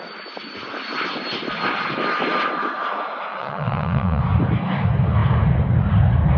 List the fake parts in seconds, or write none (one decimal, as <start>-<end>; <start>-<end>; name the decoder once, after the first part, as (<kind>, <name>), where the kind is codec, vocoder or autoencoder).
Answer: 3.3-4.2 (vocoder, WaveNeXt)